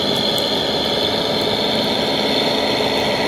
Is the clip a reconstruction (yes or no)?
no